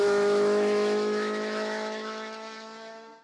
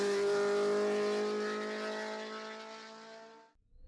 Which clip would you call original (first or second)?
second